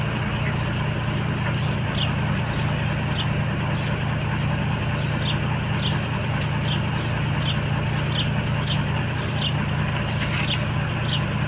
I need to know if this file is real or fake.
real